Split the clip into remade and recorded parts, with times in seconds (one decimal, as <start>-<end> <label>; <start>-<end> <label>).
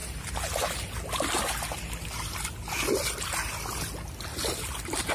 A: 0.0-5.1 recorded